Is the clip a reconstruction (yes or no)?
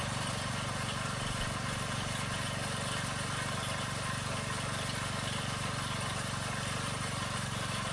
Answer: no